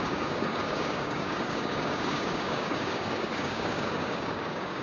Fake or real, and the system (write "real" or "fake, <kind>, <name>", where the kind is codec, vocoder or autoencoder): fake, codec, DAC